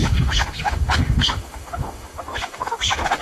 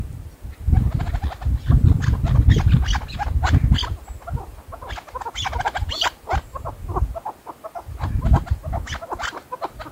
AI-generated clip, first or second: first